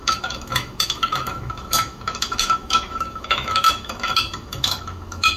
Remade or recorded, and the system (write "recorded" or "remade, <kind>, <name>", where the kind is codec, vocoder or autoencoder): remade, autoencoder, DAC-VAE